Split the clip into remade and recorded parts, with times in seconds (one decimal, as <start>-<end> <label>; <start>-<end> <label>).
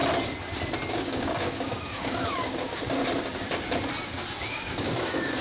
0.0-0.9 recorded; 0.9-3.0 remade; 3.0-4.5 recorded; 4.5-5.4 remade